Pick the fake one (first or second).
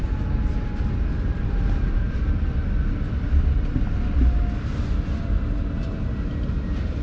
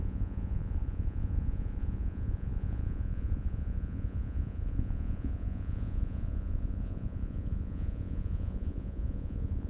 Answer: second